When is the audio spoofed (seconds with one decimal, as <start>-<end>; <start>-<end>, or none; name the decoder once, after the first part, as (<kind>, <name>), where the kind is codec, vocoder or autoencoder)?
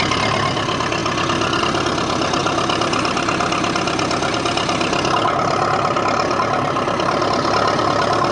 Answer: none